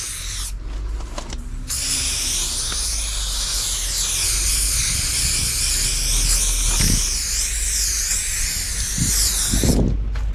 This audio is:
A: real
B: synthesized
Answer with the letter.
A